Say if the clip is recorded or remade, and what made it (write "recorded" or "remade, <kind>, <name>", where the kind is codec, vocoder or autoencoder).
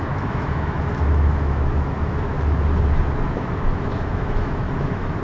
remade, autoencoder, DAC-VAE